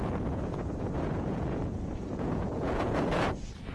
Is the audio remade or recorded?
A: remade